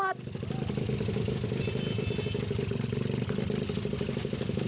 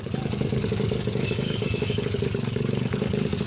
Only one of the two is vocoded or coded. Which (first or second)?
second